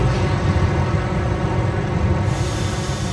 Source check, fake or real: real